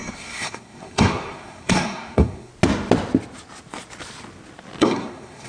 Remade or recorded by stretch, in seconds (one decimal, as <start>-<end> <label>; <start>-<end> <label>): 0.0-2.5 remade; 2.5-4.8 recorded; 4.8-5.5 remade